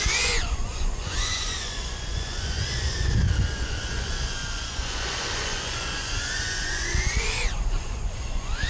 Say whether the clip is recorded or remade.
remade